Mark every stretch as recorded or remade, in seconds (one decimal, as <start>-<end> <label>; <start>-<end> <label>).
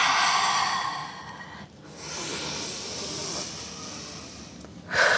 0.0-5.2 recorded